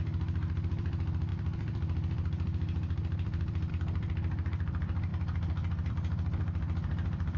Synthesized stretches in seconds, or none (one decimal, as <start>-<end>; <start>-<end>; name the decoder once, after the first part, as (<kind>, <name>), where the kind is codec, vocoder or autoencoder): 0.0-5.1 (vocoder, BigVGAN v2); 5.9-7.4